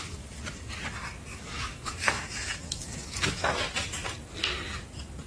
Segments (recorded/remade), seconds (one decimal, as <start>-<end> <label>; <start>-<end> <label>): 0.0-1.3 recorded; 1.3-3.4 remade; 3.4-5.3 recorded